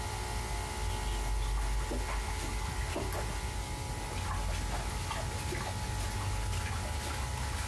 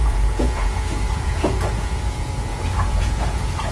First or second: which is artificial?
second